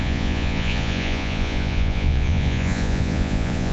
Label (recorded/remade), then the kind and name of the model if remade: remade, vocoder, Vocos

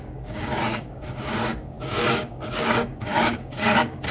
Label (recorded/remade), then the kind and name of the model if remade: remade, codec, DAC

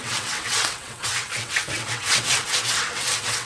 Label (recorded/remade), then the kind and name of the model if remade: remade, vocoder, WaveNeXt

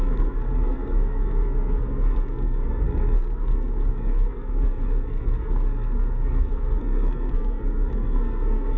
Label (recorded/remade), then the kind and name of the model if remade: remade, codec, SNAC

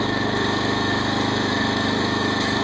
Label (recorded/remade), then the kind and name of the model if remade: remade, autoencoder, DAC-VAE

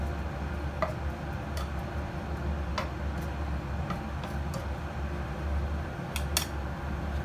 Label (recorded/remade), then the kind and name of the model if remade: recorded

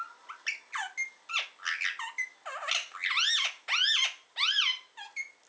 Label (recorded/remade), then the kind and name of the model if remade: recorded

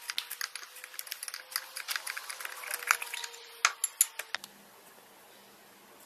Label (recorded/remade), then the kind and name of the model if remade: recorded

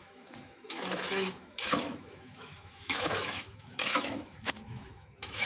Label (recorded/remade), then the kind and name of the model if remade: remade, autoencoder, DAC-VAE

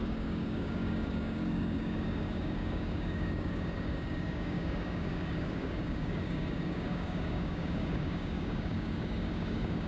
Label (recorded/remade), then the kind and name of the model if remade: remade, codec, DAC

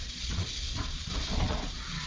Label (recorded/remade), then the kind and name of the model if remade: remade, vocoder, Vocos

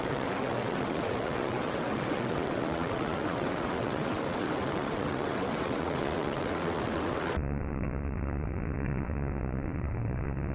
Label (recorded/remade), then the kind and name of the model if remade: remade, vocoder, WaveNeXt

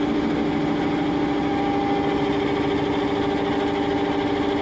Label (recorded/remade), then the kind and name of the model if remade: recorded